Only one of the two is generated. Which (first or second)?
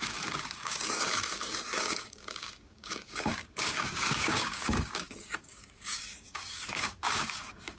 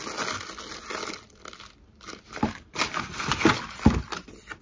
first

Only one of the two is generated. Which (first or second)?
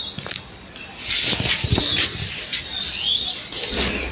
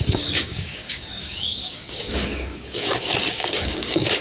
second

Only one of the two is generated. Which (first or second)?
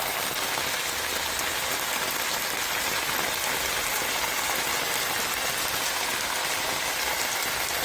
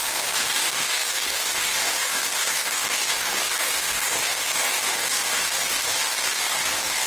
second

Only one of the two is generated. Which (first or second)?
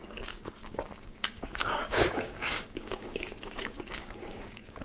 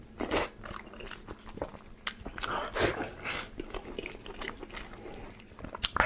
first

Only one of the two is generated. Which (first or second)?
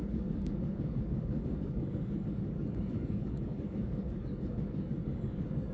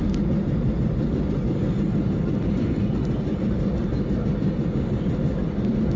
first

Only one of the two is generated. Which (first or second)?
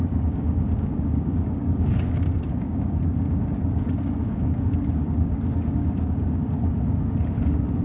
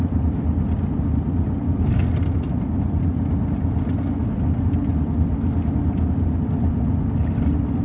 first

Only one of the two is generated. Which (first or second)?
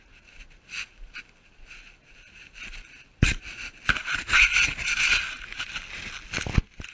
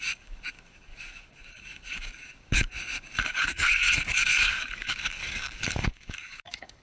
second